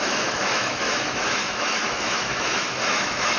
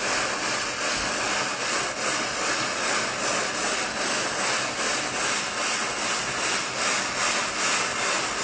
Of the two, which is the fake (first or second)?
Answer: first